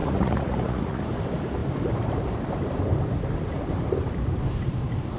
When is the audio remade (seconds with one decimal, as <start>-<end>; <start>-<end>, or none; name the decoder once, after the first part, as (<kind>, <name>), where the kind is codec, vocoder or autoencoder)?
0.0-1.0 (vocoder, Vocos)